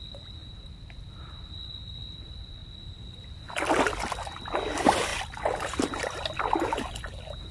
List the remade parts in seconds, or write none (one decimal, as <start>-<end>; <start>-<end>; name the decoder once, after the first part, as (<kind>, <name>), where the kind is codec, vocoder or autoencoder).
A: 2.6-4.4 (vocoder, BigVGAN v2); 5.1-6.4